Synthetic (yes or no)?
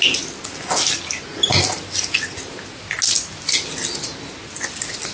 no